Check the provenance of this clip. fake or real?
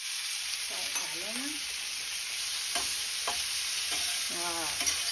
real